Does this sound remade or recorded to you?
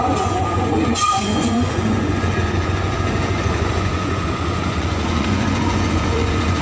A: remade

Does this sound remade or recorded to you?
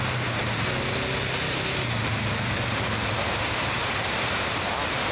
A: recorded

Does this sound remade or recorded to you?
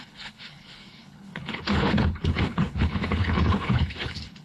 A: remade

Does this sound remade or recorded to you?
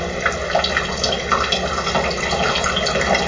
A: recorded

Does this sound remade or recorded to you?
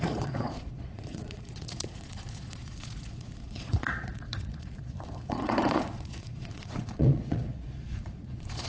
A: remade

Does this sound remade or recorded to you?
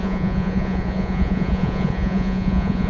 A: remade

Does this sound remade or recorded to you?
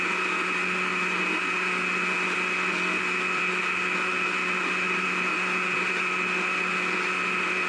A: recorded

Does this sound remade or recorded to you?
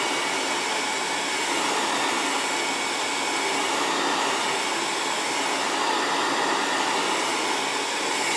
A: recorded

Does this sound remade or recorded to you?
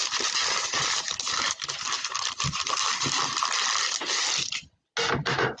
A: recorded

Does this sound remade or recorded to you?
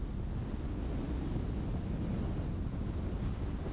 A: recorded